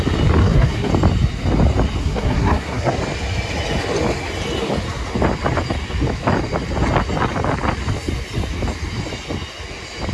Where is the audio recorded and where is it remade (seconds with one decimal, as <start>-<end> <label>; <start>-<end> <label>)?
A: 0.0-0.4 recorded; 0.4-0.9 remade; 0.9-2.0 recorded; 2.0-3.0 remade; 3.0-10.1 recorded